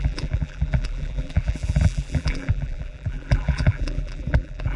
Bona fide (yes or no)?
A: no